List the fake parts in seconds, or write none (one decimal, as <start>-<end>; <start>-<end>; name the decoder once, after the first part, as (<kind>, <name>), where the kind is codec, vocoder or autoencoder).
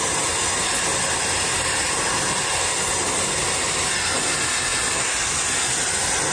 none